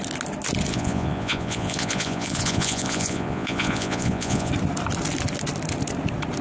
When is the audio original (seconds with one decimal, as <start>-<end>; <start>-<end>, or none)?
0.0-0.7; 4.5-6.4

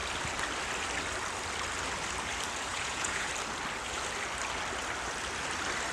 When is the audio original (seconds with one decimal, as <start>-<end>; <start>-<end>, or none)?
0.0-2.7; 3.3-5.9